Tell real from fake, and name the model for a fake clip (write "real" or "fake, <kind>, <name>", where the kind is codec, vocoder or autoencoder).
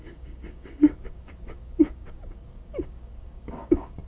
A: fake, codec, DAC